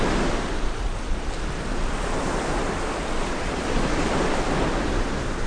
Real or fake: real